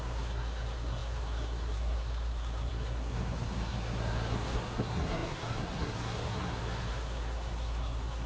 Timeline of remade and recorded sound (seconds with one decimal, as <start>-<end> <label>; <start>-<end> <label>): 0.0-8.3 remade